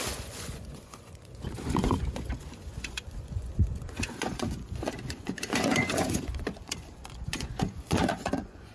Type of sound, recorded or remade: remade